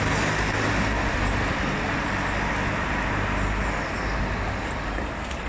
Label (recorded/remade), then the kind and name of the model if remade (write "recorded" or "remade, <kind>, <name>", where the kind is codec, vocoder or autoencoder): recorded